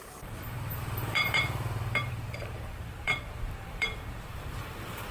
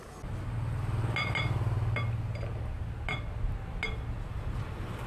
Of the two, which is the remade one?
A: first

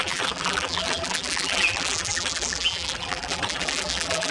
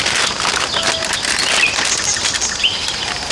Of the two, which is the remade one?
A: first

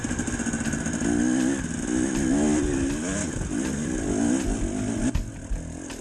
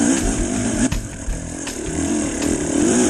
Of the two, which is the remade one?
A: second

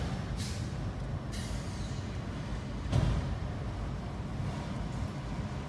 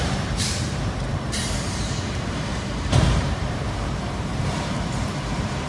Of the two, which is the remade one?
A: second